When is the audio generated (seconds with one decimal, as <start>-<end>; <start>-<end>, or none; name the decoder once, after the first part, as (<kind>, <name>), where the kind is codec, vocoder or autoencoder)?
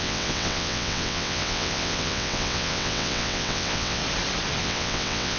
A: 0.0-4.0 (vocoder, WaveNeXt); 4.6-5.4